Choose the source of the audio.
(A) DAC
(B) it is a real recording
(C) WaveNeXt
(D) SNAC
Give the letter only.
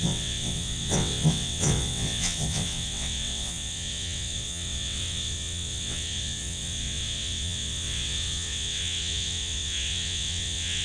C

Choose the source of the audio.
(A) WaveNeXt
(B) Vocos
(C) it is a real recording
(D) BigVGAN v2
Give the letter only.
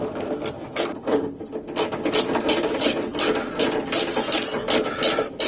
C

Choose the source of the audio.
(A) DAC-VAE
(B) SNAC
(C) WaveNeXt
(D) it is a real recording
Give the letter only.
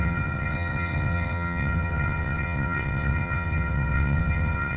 C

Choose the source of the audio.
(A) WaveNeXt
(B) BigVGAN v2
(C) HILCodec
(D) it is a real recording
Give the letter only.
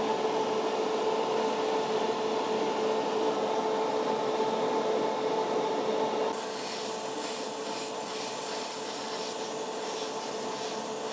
D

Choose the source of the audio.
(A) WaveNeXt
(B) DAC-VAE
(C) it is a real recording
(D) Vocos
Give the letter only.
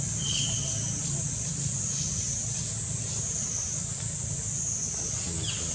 C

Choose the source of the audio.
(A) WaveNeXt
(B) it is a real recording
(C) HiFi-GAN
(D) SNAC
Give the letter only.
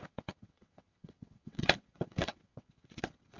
A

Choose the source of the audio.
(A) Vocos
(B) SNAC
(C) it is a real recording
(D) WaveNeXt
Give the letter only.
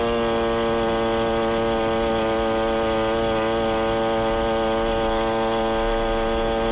C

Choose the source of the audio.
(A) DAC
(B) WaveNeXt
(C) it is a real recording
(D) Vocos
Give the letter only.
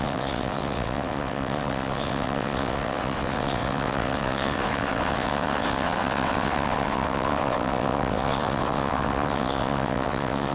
B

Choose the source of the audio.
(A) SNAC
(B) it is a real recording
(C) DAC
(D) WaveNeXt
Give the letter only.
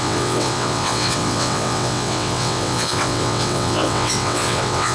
D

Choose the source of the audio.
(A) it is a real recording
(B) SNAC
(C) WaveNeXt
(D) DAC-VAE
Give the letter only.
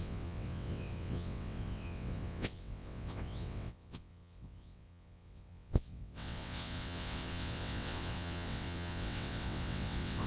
C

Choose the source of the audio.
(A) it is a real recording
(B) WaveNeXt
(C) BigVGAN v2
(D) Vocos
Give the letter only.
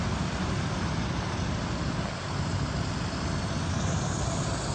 A